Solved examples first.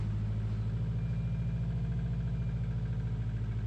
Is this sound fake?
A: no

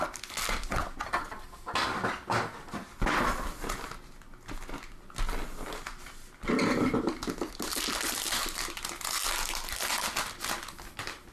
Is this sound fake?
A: no